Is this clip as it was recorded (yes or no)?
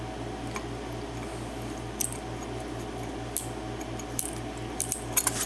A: yes